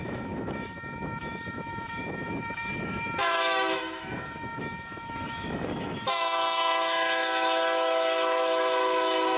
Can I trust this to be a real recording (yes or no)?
no